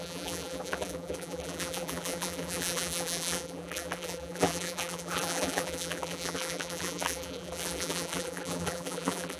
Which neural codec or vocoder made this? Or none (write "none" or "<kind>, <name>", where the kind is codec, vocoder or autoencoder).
vocoder, BigVGAN v2